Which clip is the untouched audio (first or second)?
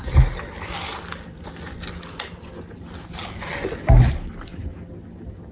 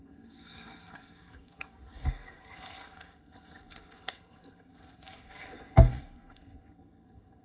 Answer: first